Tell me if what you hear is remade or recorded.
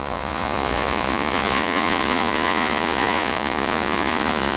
remade